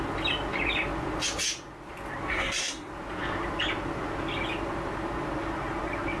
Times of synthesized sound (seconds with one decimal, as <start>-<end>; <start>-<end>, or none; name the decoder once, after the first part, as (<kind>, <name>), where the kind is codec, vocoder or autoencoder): 2.3-2.9 (codec, SNAC)